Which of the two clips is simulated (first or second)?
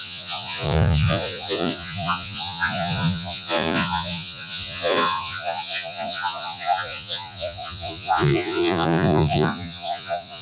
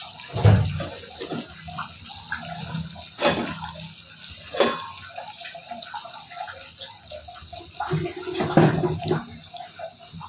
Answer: first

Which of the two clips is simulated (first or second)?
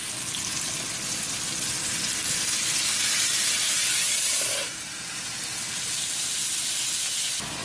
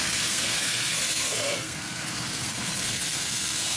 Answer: second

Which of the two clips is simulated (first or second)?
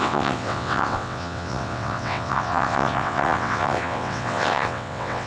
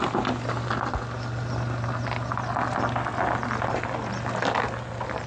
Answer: first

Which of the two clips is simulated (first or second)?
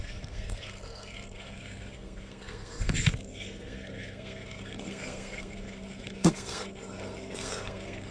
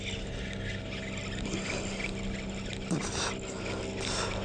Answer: first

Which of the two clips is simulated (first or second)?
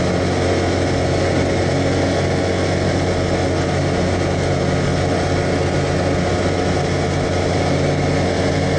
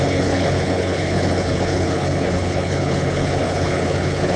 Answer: second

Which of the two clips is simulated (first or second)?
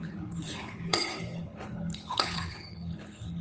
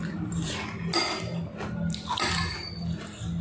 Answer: first